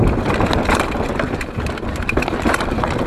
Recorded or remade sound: recorded